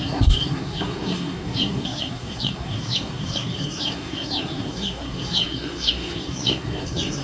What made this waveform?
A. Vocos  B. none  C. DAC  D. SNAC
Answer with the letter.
D